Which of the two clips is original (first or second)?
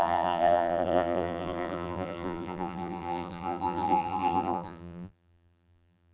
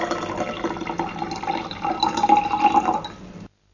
second